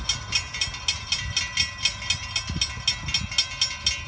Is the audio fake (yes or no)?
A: no